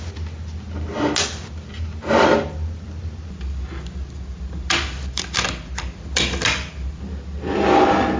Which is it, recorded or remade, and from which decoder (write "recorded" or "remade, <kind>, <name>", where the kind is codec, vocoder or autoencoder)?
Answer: recorded